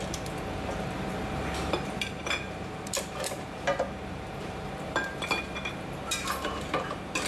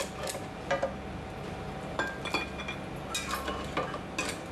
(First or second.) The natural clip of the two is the second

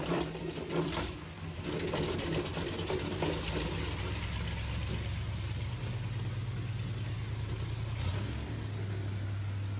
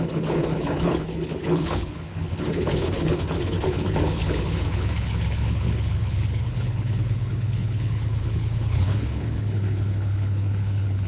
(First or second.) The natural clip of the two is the first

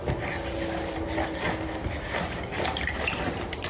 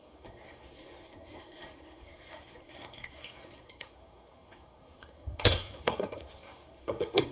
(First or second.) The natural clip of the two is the first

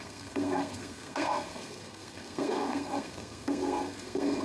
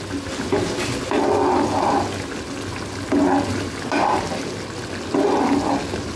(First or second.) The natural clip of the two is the second